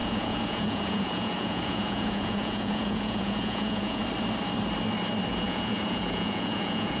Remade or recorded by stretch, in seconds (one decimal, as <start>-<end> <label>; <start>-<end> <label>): 0.0-4.0 remade; 4.0-5.3 recorded; 5.3-7.0 remade